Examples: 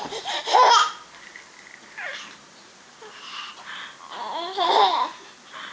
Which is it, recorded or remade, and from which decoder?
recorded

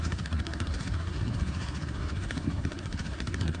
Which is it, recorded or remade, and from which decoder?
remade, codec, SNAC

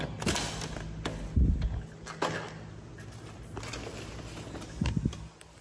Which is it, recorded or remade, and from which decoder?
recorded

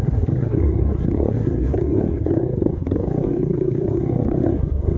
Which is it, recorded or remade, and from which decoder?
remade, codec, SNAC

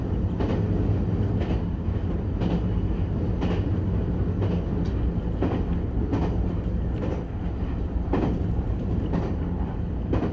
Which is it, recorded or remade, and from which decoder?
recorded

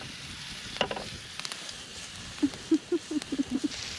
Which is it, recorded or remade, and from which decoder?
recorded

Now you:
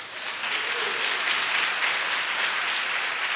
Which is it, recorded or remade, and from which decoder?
recorded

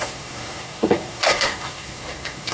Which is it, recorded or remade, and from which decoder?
remade, codec, SNAC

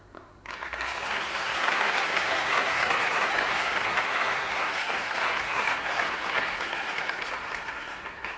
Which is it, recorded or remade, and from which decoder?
remade, codec, SNAC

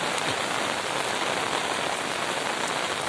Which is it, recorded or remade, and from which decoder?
recorded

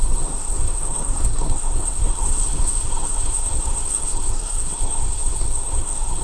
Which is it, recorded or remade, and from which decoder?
remade, codec, SNAC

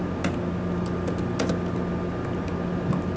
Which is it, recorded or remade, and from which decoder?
recorded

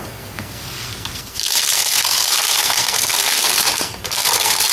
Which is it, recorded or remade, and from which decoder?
remade, codec, SNAC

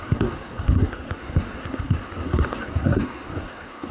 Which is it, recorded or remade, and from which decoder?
remade, codec, SNAC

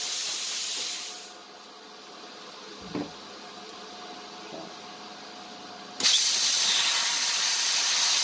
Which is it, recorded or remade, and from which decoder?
recorded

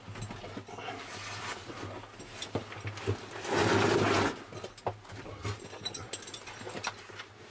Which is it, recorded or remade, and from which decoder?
recorded